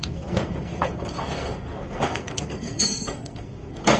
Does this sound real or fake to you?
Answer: fake